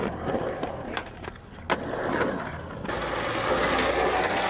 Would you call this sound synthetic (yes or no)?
no